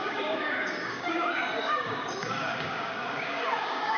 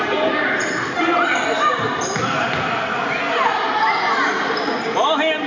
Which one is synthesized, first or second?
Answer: first